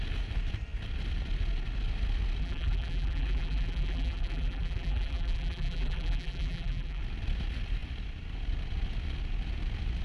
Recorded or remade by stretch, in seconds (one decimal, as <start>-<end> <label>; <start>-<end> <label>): 0.0-2.4 recorded; 2.4-7.0 remade; 7.0-10.0 recorded